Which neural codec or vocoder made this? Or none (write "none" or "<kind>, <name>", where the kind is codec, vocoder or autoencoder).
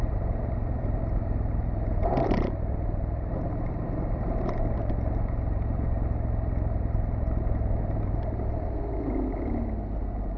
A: vocoder, BigVGAN v2